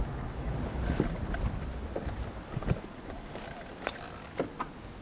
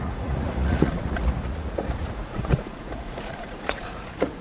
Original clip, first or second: first